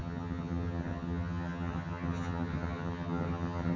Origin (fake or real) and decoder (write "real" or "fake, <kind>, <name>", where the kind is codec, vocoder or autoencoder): fake, vocoder, HiFi-GAN